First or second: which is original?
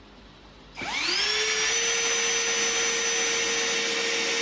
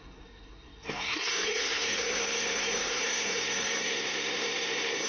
first